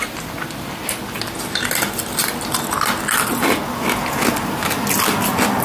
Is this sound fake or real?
real